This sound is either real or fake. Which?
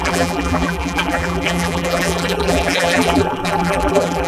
fake